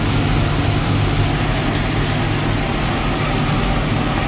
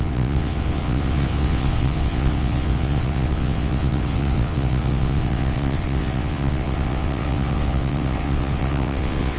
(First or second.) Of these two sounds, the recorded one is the first